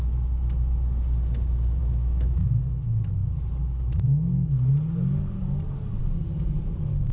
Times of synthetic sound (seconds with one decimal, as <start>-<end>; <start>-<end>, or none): 1.8-2.6